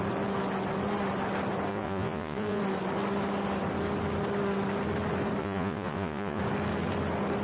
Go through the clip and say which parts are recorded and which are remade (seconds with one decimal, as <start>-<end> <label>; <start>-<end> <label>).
0.0-1.7 recorded; 1.7-2.6 remade; 2.6-5.4 recorded; 5.4-6.4 remade; 6.4-7.4 recorded